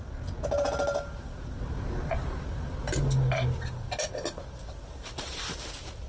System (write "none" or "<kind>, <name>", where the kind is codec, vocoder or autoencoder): none